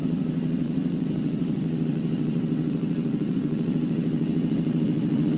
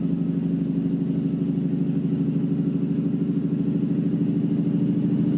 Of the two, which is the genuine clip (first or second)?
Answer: second